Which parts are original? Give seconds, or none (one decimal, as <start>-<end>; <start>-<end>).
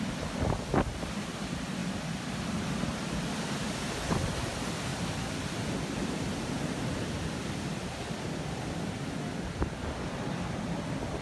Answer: 0.0-1.8; 3.9-4.9; 8.0-11.2